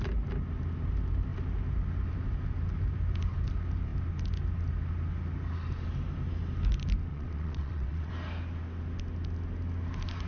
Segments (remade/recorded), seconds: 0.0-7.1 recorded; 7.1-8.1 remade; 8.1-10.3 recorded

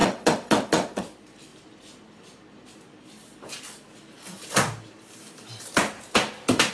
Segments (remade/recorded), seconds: 0.0-1.0 remade; 1.0-6.7 recorded